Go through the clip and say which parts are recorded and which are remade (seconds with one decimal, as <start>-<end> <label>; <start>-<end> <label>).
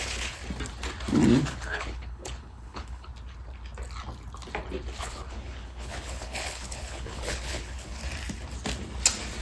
0.0-0.4 remade; 0.4-1.5 recorded; 1.5-3.1 remade; 3.1-5.0 recorded; 5.0-8.0 remade; 8.0-9.4 recorded